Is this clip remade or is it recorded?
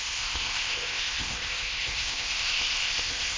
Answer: remade